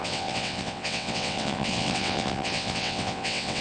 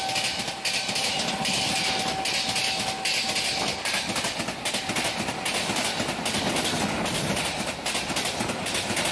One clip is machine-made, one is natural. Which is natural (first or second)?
second